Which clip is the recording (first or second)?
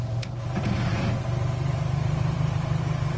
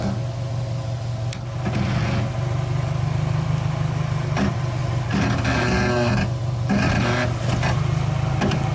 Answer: second